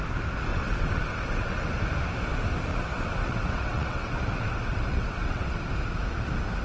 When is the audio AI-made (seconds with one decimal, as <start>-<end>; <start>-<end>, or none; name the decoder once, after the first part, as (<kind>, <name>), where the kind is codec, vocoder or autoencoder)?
0.5-1.7 (vocoder, WaveNeXt); 2.7-5.6